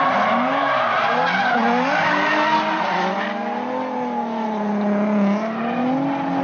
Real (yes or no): yes